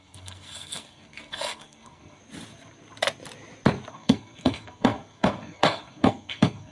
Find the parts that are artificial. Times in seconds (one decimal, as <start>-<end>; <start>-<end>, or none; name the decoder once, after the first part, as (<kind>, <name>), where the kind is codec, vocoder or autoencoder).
0.0-2.2 (codec, SNAC); 3.9-6.7